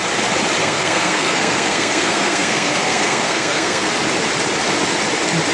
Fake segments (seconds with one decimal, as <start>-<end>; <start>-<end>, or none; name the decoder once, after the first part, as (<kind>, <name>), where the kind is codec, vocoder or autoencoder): 0.6-3.9 (codec, SNAC)

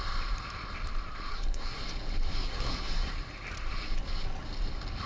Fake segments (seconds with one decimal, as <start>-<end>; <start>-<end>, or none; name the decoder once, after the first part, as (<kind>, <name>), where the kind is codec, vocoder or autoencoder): 1.3-1.8 (codec, SNAC); 2.3-3.1

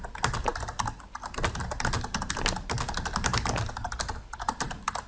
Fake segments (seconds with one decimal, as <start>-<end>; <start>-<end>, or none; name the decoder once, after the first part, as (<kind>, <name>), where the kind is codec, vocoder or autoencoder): none

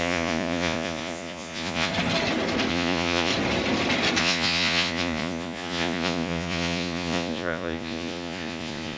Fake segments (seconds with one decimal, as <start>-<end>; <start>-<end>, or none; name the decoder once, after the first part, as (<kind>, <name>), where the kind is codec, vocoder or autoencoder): 0.0-1.9 (vocoder, Vocos); 2.7-3.3; 4.2-9.0

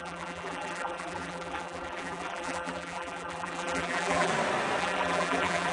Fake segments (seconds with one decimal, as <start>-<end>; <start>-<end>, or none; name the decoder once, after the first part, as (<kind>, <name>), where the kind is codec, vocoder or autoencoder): 0.0-4.3 (vocoder, BigVGAN v2); 4.8-5.7

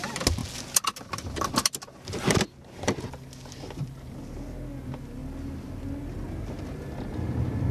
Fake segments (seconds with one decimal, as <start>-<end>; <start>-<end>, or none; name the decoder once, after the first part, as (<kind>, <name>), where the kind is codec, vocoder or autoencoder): none

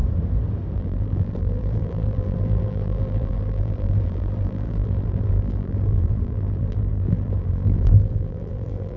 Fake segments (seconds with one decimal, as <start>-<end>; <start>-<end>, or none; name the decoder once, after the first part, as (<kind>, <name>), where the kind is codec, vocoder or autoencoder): 0.7-9.0 (vocoder, BigVGAN v2)